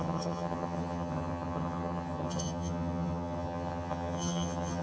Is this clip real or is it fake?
fake